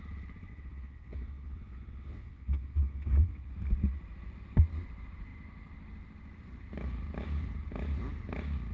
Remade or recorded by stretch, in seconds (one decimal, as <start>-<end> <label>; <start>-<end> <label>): 0.0-0.5 recorded; 0.5-3.5 remade; 3.5-8.7 recorded